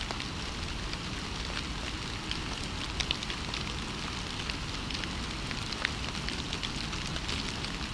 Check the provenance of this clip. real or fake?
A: real